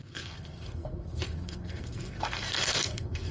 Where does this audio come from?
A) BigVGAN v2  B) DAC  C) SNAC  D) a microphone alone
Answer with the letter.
C